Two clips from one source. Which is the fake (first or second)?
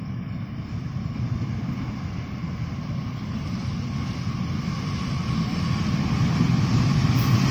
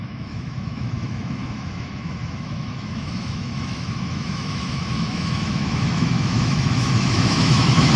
second